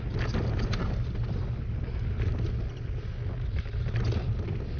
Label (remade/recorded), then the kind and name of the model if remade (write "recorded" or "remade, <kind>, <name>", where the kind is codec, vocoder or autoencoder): recorded